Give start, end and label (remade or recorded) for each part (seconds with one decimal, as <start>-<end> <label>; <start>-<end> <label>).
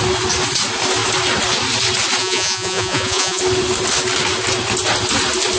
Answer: 0.0-2.2 recorded; 2.2-3.4 remade; 3.4-5.6 recorded